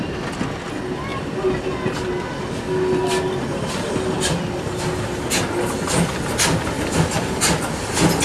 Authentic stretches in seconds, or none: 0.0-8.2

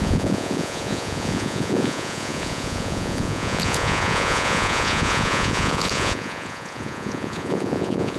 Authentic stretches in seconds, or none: none

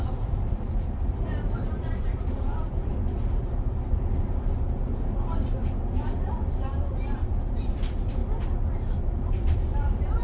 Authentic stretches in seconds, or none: 2.9-6.7; 8.2-9.0

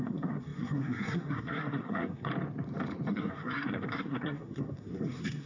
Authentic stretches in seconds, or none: 2.3-3.1

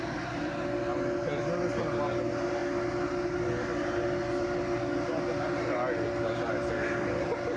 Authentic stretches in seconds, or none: 0.0-7.6